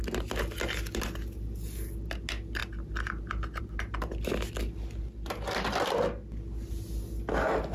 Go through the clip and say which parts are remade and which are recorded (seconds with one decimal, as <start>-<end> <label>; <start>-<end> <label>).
0.0-7.7 recorded